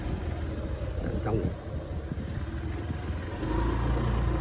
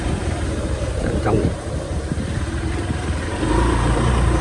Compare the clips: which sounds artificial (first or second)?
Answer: second